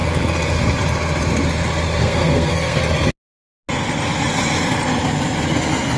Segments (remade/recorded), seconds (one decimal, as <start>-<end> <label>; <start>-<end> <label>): 0.0-2.0 recorded; 2.0-2.8 remade; 2.8-6.0 recorded